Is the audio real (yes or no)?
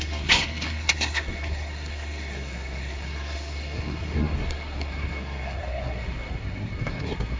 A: no